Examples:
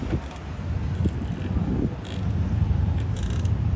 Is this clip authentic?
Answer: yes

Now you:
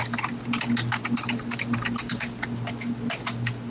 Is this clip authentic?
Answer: yes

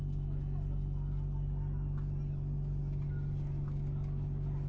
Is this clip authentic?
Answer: yes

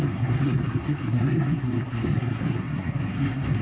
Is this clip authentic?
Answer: no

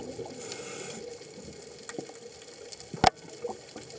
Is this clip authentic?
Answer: yes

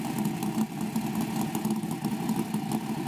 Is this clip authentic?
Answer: yes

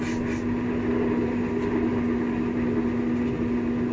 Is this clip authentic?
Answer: yes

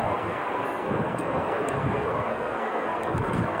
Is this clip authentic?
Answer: no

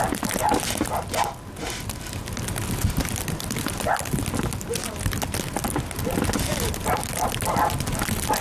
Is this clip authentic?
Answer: yes